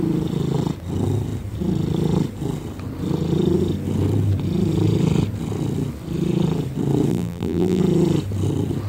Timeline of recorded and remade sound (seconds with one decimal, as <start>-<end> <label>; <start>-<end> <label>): 0.0-7.1 recorded; 7.1-7.8 remade; 7.8-8.9 recorded